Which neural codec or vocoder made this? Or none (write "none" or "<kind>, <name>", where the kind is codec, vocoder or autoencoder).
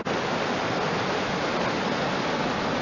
none